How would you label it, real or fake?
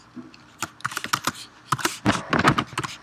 real